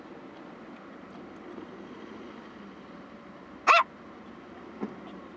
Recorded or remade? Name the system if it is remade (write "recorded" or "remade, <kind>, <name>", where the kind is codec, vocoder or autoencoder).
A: recorded